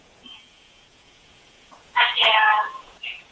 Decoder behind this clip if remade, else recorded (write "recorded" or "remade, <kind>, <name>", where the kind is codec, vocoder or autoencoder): remade, vocoder, Vocos